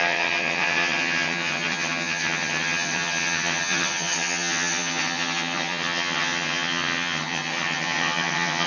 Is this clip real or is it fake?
fake